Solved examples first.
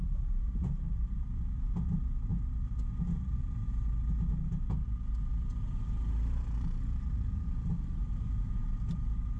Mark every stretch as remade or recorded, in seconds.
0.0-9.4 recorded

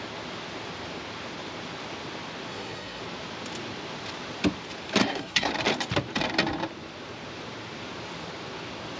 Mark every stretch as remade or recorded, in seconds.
0.0-2.5 recorded; 2.5-3.0 remade; 3.0-5.0 recorded; 5.0-5.5 remade; 5.5-9.0 recorded

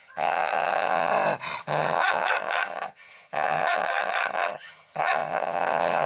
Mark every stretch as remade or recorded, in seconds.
0.0-1.1 remade; 1.1-1.6 recorded; 1.6-6.1 remade

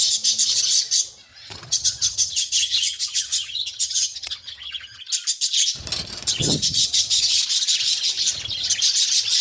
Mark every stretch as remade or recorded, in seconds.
0.0-1.3 recorded; 1.3-5.0 remade; 5.0-6.4 recorded; 6.4-7.4 remade; 7.4-9.4 recorded

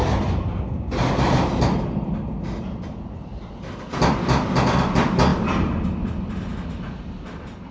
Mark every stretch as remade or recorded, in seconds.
0.0-7.7 recorded

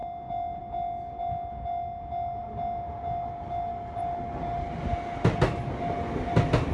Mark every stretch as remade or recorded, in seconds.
0.0-6.7 recorded

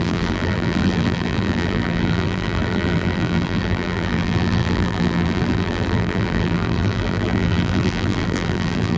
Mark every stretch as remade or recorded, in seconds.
0.0-9.0 remade

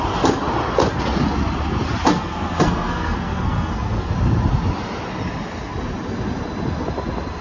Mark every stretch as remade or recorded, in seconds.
0.0-2.1 recorded; 2.1-4.1 remade; 4.1-7.4 recorded